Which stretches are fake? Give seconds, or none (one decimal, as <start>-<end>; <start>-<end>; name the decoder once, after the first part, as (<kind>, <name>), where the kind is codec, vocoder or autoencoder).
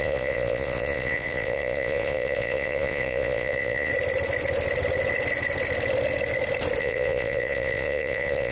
0.0-3.9 (vocoder, Vocos); 6.8-8.5